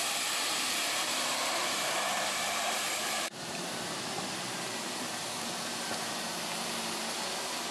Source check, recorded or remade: remade